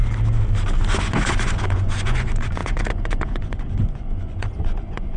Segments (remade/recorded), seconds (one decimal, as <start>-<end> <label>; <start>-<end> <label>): 0.0-1.0 recorded; 1.0-5.2 remade